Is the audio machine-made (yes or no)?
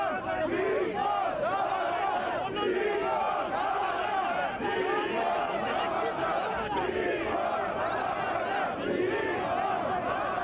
no